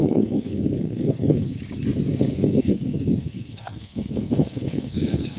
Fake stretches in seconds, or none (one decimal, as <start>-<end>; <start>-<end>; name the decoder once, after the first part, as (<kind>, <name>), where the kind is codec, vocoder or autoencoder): 0.0-1.6 (codec, SNAC); 2.1-5.4